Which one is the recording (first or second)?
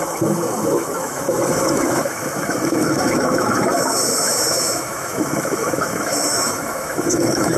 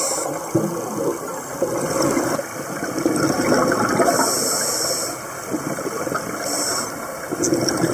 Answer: second